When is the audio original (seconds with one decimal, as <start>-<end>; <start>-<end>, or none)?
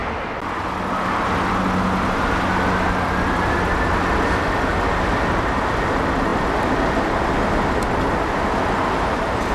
0.0-9.5